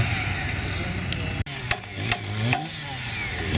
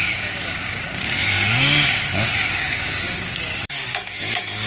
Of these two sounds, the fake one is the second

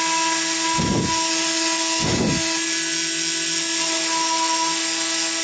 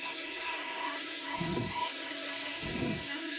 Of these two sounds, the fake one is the second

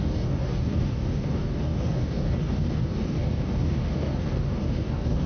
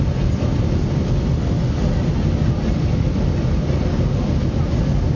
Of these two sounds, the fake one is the first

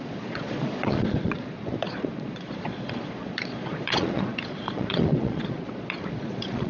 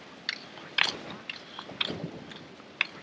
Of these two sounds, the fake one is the first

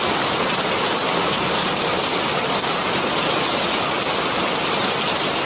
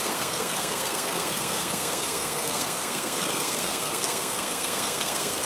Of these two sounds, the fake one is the second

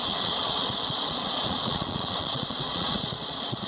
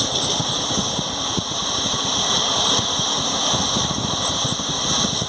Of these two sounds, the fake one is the first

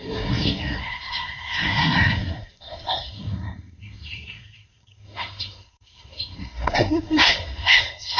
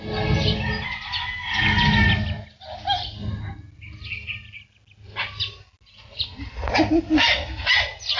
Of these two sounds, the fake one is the first